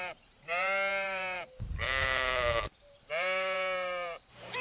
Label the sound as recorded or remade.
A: remade